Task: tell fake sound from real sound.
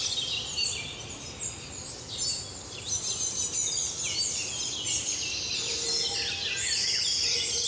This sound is real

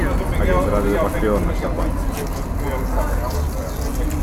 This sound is real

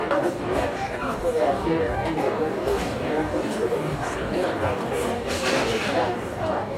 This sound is fake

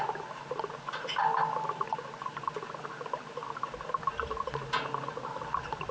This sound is real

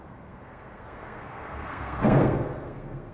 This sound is fake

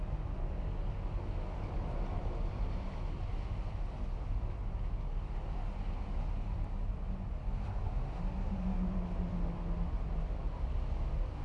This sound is real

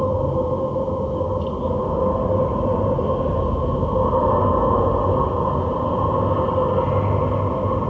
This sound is real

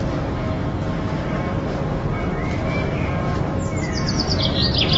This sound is real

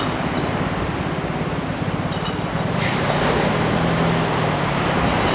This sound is real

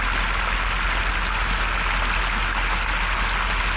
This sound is real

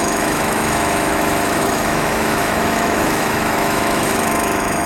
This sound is fake